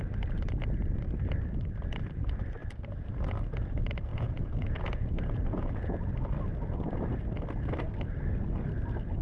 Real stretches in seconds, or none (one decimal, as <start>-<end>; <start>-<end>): 0.0-4.1; 6.1-9.2